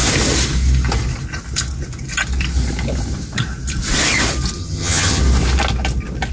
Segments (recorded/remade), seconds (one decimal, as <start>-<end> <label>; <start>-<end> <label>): 0.0-4.6 recorded; 4.6-5.2 remade; 5.2-6.3 recorded